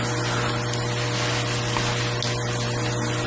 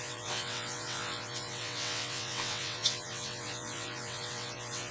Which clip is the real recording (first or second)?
first